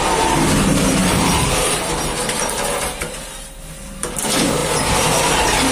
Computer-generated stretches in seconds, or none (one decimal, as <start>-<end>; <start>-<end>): 1.0-2.4